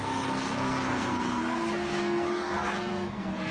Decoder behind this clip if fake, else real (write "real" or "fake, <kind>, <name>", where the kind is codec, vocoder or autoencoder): fake, codec, SNAC